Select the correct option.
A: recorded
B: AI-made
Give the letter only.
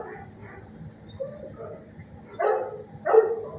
A